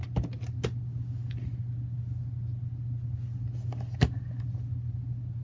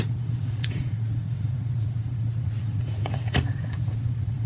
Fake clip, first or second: second